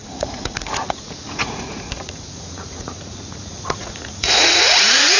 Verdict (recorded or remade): remade